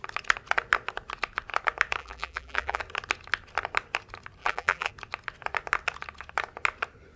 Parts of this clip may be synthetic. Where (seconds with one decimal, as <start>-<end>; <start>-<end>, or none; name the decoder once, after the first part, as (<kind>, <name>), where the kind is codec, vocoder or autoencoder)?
2.0-2.8 (vocoder, BigVGAN v2); 4.4-4.9